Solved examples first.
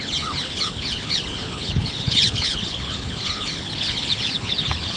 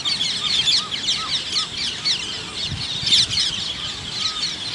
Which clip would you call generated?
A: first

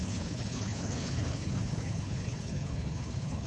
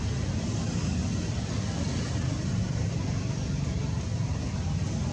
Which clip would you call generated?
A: first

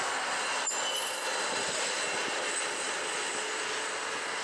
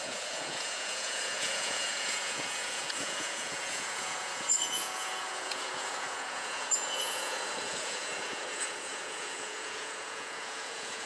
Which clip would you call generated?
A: second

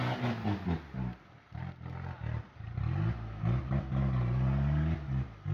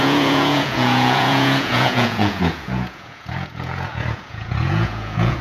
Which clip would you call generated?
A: second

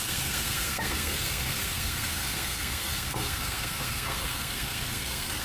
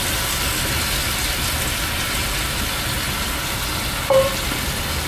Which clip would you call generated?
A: first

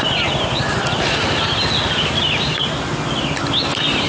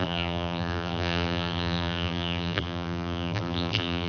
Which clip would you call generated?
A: second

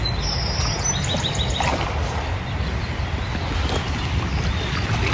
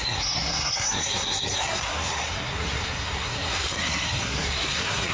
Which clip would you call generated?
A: second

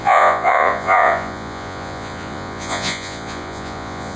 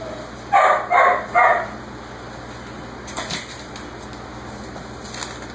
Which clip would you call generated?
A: first